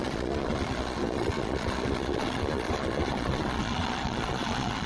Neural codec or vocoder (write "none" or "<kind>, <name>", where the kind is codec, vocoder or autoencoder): vocoder, Vocos